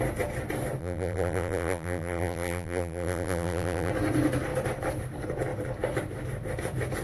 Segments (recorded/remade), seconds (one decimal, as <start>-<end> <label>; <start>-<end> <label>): 0.0-0.8 recorded; 0.8-3.9 remade; 3.9-7.0 recorded